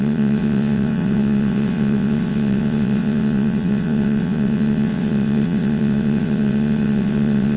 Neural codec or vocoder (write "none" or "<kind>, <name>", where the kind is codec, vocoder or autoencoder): vocoder, WaveNeXt